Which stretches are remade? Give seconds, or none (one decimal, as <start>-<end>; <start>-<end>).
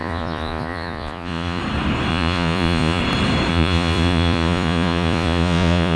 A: 0.0-1.6; 2.1-3.0; 3.5-6.0